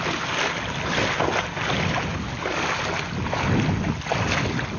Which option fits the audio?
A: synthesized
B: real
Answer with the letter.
B